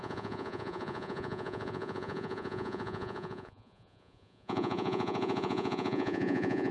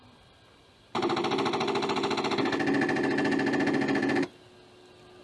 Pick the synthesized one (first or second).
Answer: first